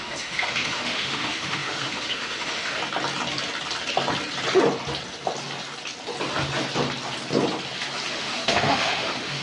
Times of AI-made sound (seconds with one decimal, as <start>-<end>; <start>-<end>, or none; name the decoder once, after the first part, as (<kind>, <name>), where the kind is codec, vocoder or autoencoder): 0.0-2.8 (autoencoder, DAC-VAE); 8.1-9.4